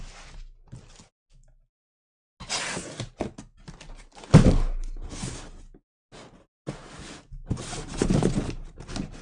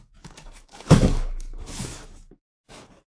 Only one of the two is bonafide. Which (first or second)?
first